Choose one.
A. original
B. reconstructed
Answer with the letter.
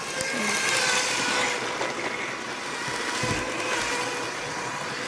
A